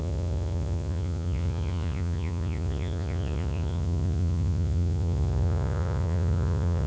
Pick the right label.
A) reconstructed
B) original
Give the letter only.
A